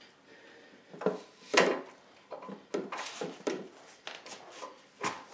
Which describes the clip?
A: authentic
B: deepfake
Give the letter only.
A